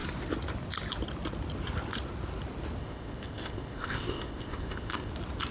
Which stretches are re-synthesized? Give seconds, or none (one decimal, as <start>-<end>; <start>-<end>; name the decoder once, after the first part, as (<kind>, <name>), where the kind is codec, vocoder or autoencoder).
2.8-5.1 (codec, ZipCodec)